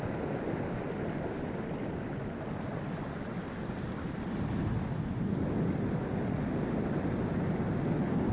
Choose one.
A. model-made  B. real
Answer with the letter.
B